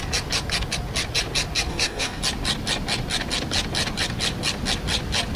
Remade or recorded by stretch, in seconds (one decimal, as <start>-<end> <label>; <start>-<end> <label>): 0.0-1.7 recorded; 1.7-2.2 remade; 2.2-5.4 recorded